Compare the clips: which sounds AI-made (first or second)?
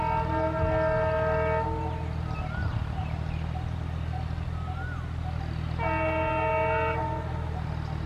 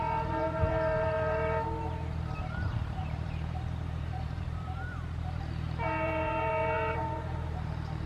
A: second